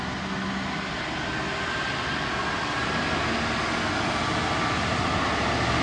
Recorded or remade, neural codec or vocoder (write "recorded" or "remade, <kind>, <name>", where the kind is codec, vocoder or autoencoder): recorded